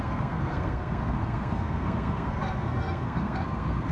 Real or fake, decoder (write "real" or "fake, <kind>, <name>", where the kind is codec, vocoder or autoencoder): fake, codec, SNAC